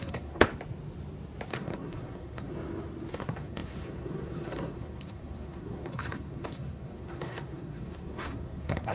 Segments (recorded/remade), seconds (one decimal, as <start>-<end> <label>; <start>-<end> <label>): 0.0-0.5 remade; 0.5-1.5 recorded; 1.5-2.5 remade; 2.5-3.1 recorded; 3.1-8.9 remade